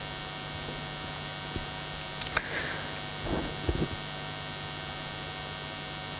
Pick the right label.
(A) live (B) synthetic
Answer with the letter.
A